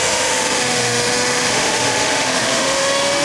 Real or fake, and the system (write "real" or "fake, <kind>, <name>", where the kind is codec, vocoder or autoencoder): fake, autoencoder, DAC-VAE